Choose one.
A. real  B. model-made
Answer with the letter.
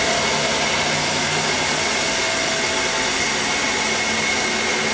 A